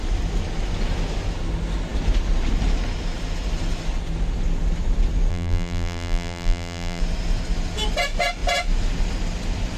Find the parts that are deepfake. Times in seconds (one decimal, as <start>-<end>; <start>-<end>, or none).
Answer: 5.3-7.0